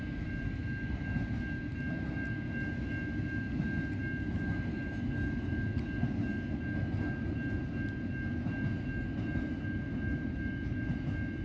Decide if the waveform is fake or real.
real